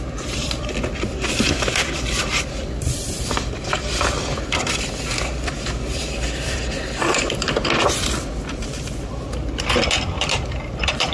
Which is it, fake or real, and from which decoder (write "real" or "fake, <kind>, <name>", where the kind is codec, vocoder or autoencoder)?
fake, vocoder, BigVGAN v2